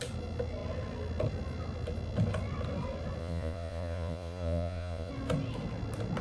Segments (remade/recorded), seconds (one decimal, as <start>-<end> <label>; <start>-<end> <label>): 0.0-3.2 recorded; 3.2-5.1 remade; 5.1-6.2 recorded